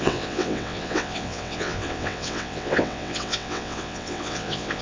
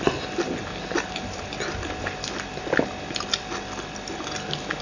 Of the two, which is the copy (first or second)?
first